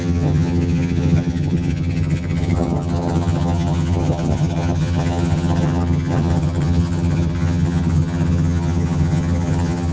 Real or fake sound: fake